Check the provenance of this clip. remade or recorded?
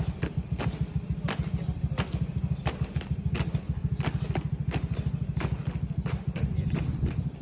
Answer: recorded